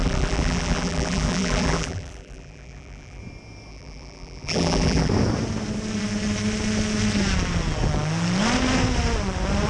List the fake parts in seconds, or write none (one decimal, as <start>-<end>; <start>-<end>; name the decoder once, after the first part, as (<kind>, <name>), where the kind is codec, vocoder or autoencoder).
0.0-3.2 (vocoder, BigVGAN v2); 3.7-5.1